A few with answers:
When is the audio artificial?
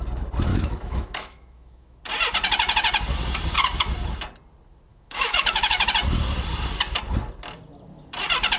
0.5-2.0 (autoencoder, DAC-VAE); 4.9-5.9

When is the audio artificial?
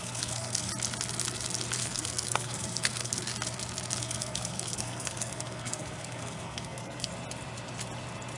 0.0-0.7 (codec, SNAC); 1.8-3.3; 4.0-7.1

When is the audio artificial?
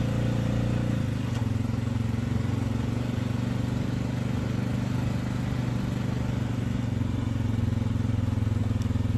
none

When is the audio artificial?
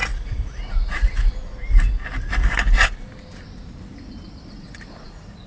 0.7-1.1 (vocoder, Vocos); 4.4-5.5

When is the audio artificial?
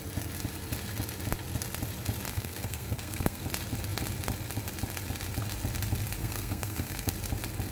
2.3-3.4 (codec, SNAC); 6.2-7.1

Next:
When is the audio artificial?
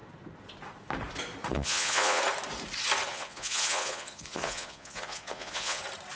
1.5-2.2 (vocoder, Vocos); 3.1-5.8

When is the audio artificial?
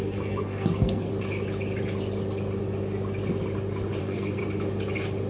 0.0-1.1 (codec, SNAC); 4.0-4.4